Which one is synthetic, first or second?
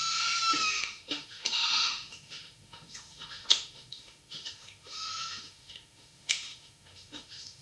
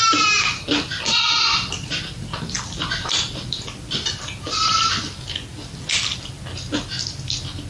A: first